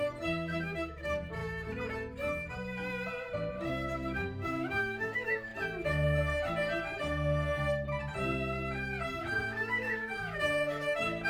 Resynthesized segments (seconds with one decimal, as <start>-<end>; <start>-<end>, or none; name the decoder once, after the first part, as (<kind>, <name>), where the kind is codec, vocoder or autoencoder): 0.0-1.4 (autoencoder, DAC-VAE); 3.7-5.5; 9.2-11.3